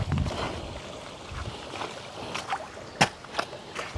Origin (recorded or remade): recorded